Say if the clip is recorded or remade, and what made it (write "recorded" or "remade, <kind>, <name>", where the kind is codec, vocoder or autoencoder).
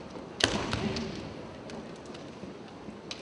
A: recorded